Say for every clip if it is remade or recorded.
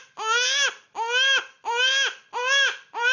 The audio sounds recorded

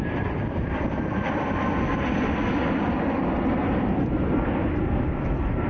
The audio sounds remade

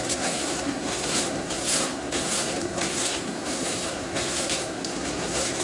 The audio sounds remade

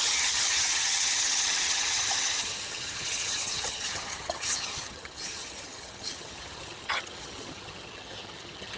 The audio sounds remade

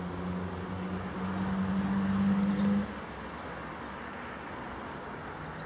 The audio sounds recorded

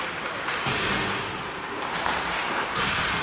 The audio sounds remade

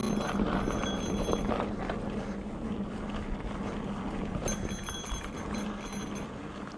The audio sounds recorded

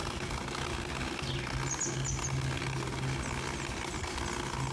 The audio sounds recorded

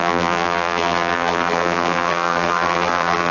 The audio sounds remade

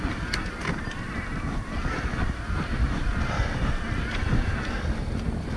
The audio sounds recorded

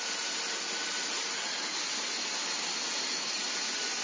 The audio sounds recorded